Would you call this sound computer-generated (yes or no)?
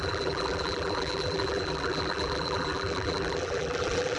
yes